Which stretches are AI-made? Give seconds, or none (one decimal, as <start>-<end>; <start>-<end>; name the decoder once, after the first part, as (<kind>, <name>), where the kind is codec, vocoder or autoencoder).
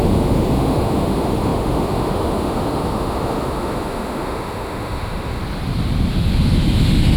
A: 0.0-5.4 (autoencoder, DAC-VAE); 6.1-7.2